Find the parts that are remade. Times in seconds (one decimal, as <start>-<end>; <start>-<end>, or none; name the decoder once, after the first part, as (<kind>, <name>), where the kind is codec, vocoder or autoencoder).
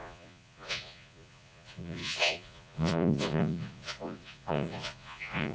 0.0-5.5 (vocoder, Vocos)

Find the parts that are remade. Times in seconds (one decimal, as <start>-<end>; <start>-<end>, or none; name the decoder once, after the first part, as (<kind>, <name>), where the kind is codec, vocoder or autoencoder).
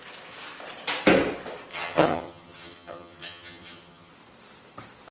1.7-4.1 (vocoder, HiFi-GAN)